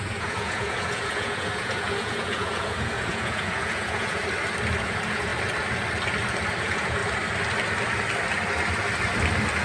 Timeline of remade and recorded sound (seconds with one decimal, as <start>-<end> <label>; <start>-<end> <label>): 0.0-4.2 remade; 4.2-4.8 recorded; 4.8-5.3 remade; 5.3-6.6 recorded; 6.6-7.0 remade; 7.0-9.6 recorded